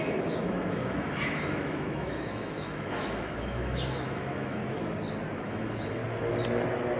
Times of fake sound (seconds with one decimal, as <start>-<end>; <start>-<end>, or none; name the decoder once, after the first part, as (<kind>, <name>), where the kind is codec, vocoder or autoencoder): 0.0-4.6 (autoencoder, DAC-VAE); 5.4-6.0